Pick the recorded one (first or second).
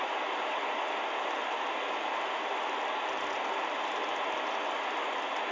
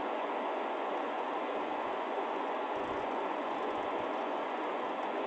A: first